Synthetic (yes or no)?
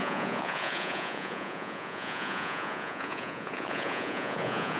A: yes